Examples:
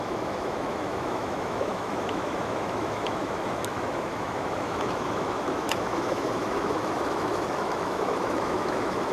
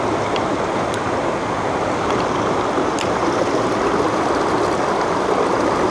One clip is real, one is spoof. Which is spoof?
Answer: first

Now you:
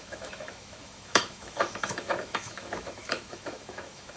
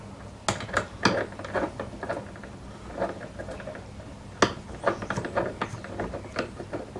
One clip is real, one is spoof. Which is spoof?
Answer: first